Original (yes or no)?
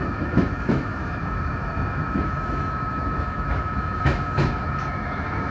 no